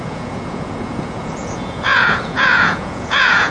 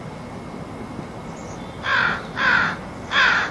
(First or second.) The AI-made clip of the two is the first